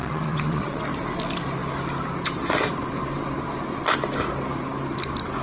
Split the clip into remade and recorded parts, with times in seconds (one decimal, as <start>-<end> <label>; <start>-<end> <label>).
0.0-0.8 remade; 0.8-5.4 recorded